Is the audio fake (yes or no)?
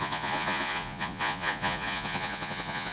yes